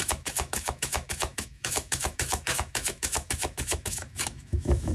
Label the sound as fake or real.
fake